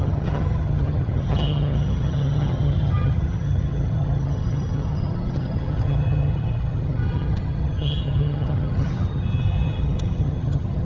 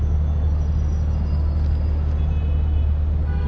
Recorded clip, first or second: second